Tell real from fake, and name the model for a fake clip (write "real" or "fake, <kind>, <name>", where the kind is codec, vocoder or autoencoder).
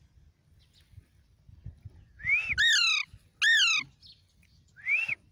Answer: real